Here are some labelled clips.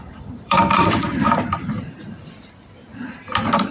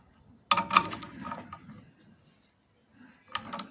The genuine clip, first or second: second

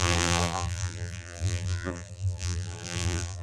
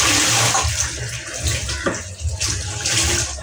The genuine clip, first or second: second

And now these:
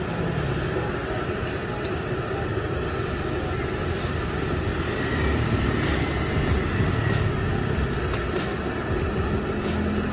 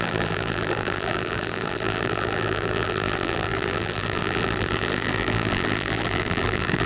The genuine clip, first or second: first